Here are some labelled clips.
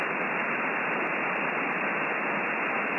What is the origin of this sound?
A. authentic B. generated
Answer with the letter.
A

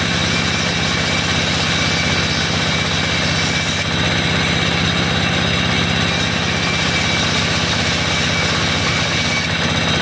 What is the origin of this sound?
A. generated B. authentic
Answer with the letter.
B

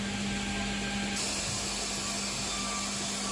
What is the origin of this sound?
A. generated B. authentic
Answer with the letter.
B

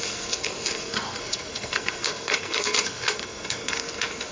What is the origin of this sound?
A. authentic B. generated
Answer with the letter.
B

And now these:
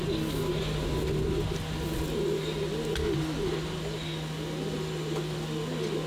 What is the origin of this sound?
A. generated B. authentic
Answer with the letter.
B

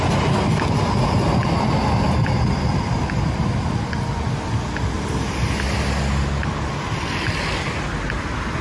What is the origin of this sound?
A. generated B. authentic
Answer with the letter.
B